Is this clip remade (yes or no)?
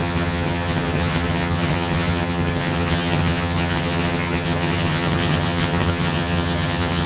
yes